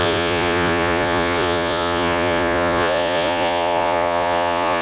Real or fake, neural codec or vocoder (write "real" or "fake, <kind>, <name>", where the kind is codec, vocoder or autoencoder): fake, vocoder, Vocos